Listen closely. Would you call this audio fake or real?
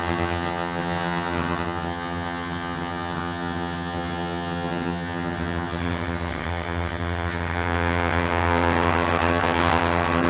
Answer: fake